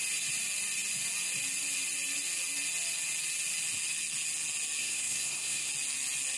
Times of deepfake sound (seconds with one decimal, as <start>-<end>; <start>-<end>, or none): 4.8-5.7